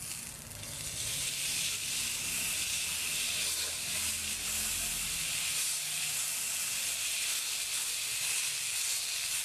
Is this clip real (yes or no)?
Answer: yes